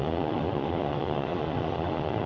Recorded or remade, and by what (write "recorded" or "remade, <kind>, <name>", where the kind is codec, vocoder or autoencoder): remade, vocoder, Vocos